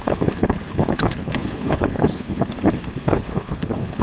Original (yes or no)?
no